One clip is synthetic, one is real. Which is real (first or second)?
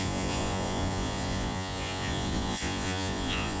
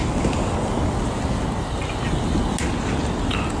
second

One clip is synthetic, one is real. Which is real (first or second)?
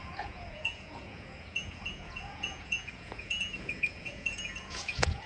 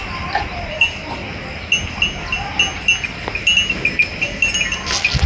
second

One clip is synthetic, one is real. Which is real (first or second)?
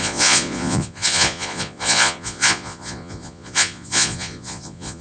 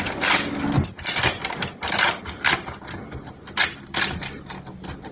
second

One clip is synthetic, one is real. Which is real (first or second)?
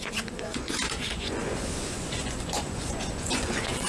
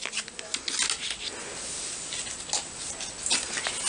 second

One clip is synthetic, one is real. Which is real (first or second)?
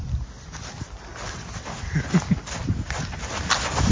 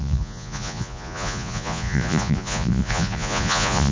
first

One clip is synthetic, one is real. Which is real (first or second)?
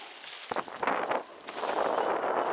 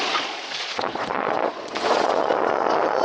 first